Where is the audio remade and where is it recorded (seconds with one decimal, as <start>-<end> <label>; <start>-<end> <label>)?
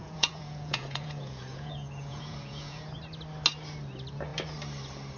0.0-3.0 remade; 3.0-5.2 recorded